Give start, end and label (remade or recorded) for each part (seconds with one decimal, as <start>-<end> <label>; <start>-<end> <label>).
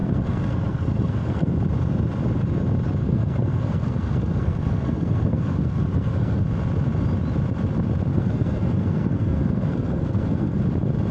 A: 0.0-1.5 remade; 1.5-3.0 recorded; 3.0-6.4 remade; 6.4-8.1 recorded; 8.1-10.6 remade; 10.6-11.1 recorded